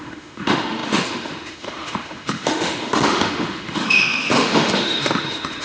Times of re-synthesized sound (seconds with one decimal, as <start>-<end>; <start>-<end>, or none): 0.0-5.6